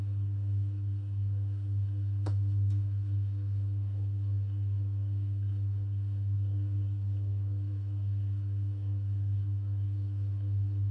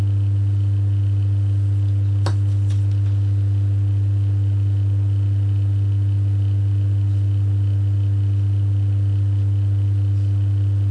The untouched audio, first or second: second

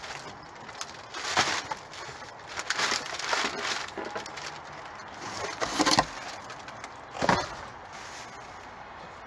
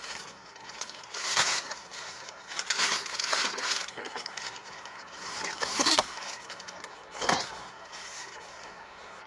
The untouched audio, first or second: first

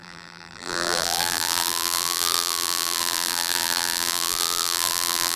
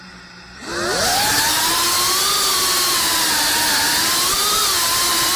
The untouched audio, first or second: second